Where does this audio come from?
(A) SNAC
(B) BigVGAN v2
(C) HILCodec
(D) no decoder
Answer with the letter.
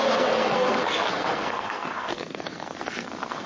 A